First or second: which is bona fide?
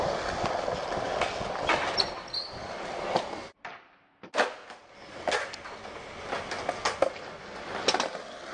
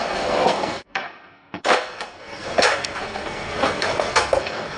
first